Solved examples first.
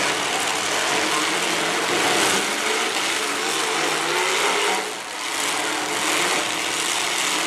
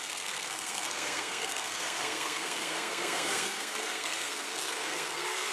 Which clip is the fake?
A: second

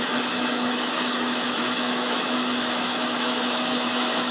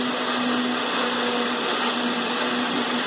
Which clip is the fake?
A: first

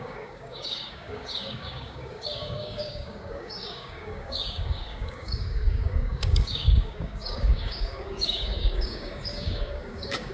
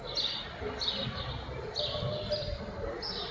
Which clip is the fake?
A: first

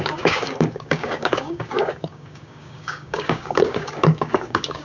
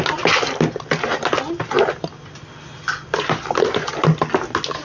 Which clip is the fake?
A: first